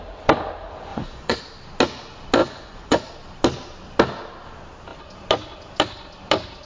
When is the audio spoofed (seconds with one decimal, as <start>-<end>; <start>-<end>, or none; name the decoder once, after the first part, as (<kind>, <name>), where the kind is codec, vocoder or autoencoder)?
0.9-1.4 (vocoder, Vocos); 2.4-3.0